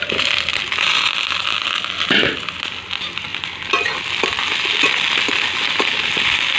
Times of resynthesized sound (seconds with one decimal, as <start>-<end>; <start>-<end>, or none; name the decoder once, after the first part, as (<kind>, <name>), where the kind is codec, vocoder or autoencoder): none